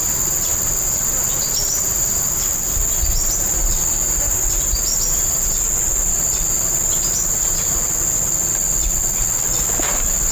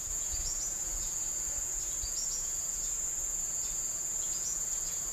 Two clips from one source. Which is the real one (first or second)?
first